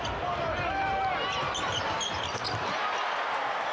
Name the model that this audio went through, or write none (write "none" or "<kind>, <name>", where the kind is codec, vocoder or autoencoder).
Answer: none